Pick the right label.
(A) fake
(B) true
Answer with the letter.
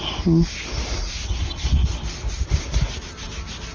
B